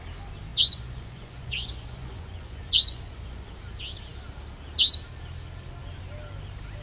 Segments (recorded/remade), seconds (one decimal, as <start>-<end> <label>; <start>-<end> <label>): 0.0-0.5 recorded; 0.5-3.5 remade; 3.5-6.8 recorded